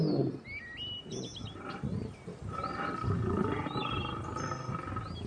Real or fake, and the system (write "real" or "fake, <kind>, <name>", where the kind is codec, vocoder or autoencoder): real